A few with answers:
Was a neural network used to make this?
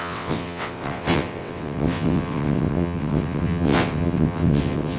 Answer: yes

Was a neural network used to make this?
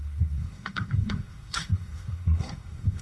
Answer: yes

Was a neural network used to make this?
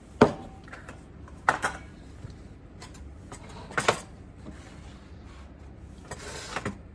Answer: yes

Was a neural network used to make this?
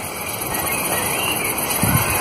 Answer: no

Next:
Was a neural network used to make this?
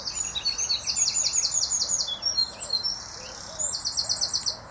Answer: no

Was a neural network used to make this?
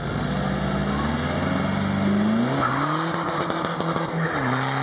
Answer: no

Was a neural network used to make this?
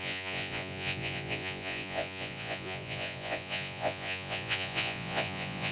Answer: yes